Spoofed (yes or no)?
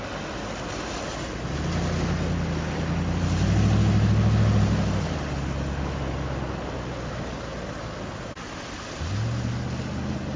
no